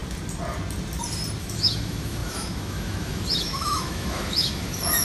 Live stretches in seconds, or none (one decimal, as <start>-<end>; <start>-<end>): 0.0-1.4